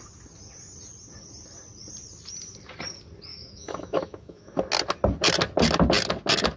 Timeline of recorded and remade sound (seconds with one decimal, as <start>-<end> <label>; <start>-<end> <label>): 0.0-3.3 recorded; 3.3-4.6 remade; 4.6-6.6 recorded